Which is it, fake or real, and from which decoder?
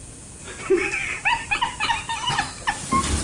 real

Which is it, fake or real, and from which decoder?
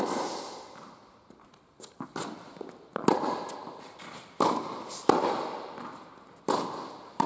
real